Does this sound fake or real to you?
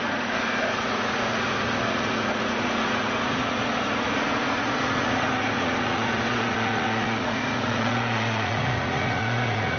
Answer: fake